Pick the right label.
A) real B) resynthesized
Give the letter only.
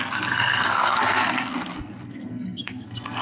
B